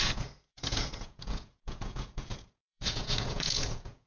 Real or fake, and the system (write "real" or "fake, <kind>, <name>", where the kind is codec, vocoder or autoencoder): fake, vocoder, Vocos